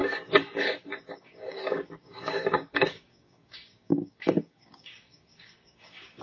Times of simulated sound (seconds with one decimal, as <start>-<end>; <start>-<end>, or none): 0.0-6.2